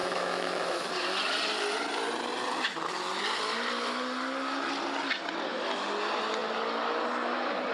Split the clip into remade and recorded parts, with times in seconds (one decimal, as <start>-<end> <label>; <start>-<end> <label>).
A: 0.0-0.9 remade; 0.9-7.7 recorded